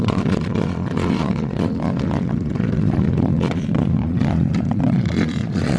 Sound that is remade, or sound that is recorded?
remade